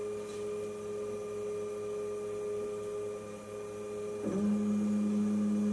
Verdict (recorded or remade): recorded